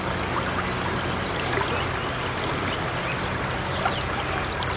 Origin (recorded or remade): recorded